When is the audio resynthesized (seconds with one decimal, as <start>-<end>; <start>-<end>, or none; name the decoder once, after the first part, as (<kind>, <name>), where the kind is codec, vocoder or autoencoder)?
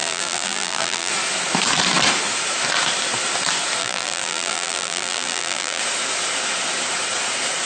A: 0.0-1.1 (vocoder, BigVGAN v2); 3.8-5.8